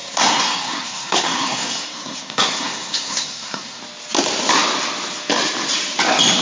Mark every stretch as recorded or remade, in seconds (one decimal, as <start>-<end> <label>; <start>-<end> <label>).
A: 0.0-3.8 remade; 3.8-6.4 recorded